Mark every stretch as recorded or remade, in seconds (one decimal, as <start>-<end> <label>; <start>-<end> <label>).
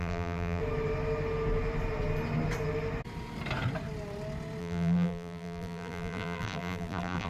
0.0-0.6 remade; 0.6-4.6 recorded; 4.6-7.3 remade